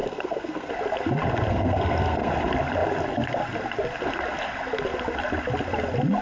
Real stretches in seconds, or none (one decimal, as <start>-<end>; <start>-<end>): 0.7-1.5; 2.3-6.2